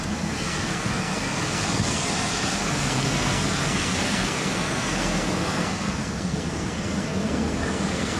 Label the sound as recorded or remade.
remade